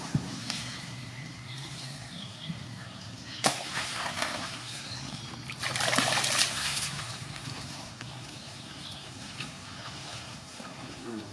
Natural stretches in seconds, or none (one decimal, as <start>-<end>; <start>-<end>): 5.2-6.5